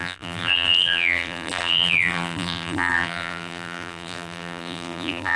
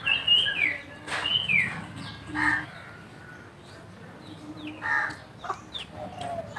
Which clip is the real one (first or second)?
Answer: second